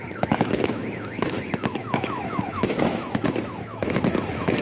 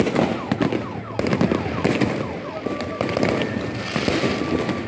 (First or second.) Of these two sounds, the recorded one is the second